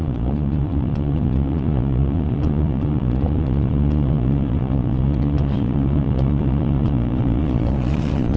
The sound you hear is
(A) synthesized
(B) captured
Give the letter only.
A